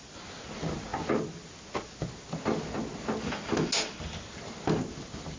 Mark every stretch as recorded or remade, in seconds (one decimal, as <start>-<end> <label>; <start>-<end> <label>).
0.0-5.4 recorded